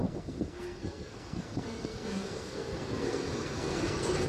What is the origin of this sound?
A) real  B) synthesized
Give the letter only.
B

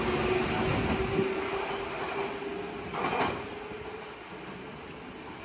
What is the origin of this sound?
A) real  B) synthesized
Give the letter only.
A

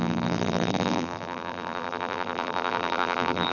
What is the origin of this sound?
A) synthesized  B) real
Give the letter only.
A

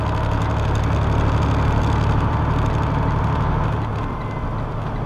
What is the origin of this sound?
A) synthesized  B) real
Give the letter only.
B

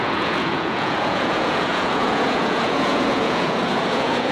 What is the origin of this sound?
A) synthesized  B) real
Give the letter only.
A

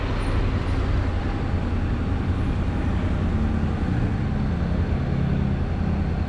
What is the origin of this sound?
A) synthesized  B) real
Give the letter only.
B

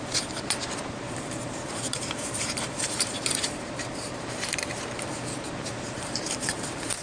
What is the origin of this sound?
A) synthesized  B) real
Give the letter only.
A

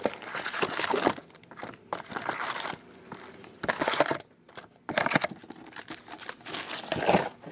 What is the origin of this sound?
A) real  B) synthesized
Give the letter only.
A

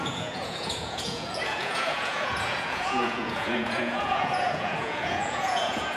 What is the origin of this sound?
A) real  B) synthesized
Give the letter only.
B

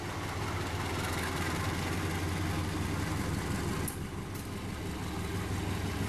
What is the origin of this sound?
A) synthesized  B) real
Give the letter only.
B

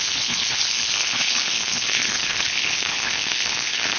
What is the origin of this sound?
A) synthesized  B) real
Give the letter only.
A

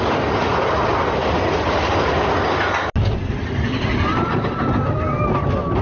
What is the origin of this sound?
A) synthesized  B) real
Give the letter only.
B